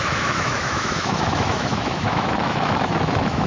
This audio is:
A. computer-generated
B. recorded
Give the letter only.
A